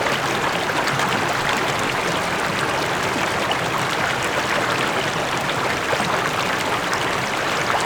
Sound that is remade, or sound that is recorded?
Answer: recorded